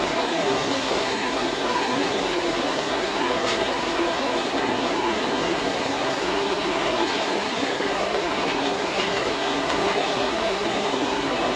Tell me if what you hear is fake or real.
fake